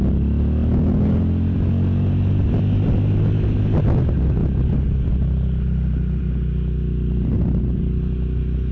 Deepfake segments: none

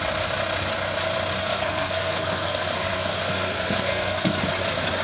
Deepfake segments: 1.4-4.4

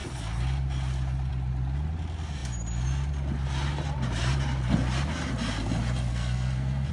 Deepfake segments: 6.1-6.9

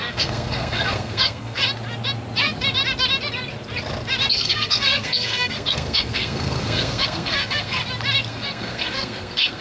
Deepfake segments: 0.0-1.6; 4.3-7.8; 8.3-9.6